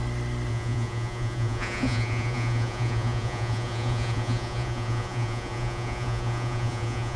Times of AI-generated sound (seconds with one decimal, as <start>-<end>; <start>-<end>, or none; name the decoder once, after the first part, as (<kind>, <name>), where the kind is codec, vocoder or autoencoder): 0.5-7.2 (vocoder, Vocos)